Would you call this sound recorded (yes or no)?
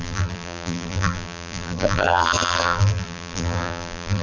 no